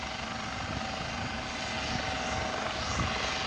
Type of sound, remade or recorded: recorded